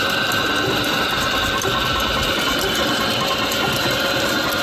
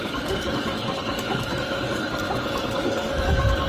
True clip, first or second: first